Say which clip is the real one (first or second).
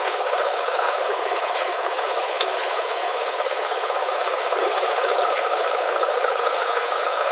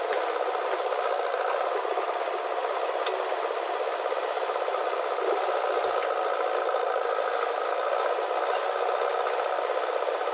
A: second